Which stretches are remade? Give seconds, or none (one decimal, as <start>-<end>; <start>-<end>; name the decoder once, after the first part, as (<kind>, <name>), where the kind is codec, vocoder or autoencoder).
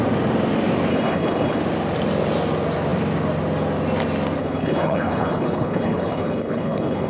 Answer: 0.9-1.6 (codec, HILCodec); 4.4-7.1